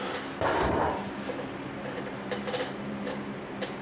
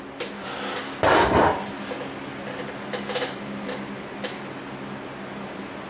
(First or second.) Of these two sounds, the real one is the second